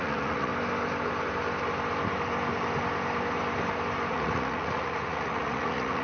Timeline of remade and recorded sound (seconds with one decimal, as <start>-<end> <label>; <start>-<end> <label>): 0.0-0.5 remade; 0.5-4.1 recorded; 4.1-6.0 remade